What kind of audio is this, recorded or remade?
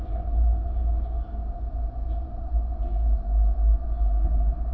recorded